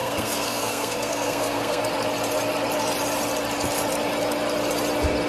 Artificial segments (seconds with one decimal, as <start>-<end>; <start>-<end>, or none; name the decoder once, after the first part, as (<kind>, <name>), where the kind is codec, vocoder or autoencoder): 0.0-1.8 (codec, SNAC)